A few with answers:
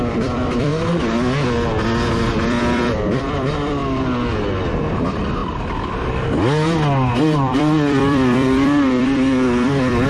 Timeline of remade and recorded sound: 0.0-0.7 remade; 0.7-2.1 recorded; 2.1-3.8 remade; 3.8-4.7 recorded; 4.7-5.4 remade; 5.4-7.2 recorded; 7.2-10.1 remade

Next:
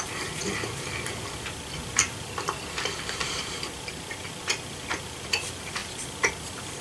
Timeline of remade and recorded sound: 0.0-0.4 recorded; 0.4-4.3 remade; 4.3-5.8 recorded; 5.8-6.3 remade; 6.3-6.8 recorded

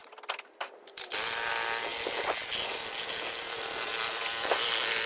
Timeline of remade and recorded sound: 0.0-1.5 remade; 1.5-1.9 recorded; 1.9-5.1 remade

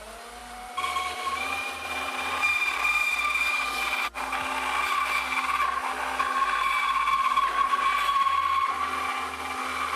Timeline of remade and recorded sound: 0.0-0.4 recorded; 0.4-3.8 remade; 3.8-10.0 recorded